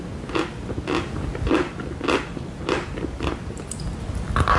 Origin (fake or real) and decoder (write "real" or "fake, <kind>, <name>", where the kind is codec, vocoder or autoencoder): real